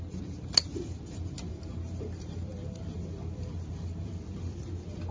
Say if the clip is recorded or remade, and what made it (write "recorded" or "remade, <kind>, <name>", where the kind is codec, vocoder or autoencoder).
remade, vocoder, BigVGAN v2